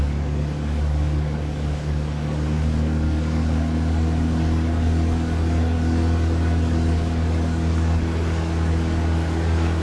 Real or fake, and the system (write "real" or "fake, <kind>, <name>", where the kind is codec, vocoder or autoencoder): fake, codec, DAC